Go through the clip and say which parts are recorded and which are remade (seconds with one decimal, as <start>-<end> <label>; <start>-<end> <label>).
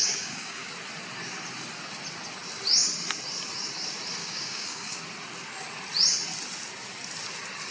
0.0-0.7 remade; 0.7-4.2 recorded; 4.2-5.0 remade; 5.0-7.7 recorded